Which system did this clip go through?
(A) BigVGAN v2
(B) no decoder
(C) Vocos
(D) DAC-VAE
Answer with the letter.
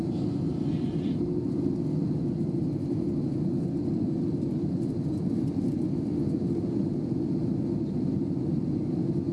B